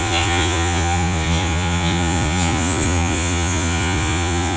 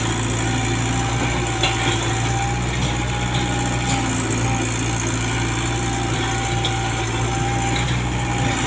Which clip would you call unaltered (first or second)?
second